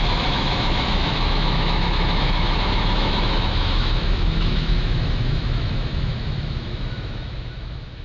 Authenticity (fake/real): fake